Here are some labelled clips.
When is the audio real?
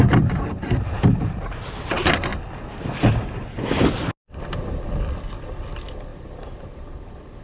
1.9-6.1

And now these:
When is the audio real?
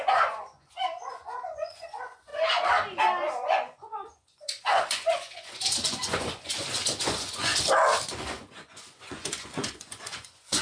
2.3-3.2; 7.5-8.1